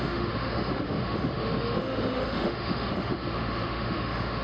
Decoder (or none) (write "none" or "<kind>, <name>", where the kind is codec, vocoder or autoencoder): autoencoder, DAC-VAE